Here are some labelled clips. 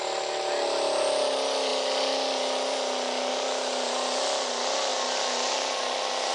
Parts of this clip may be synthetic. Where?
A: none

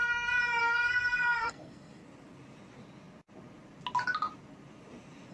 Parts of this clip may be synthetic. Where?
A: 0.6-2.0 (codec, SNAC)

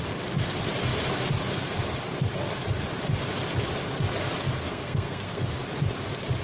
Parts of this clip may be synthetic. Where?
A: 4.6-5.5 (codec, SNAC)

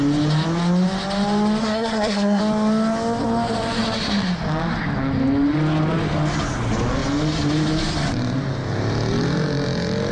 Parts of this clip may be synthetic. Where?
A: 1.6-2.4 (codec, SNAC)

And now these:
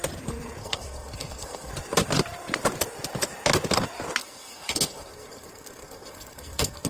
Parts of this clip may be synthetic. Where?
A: 0.6-1.7 (codec, SNAC); 4.2-6.9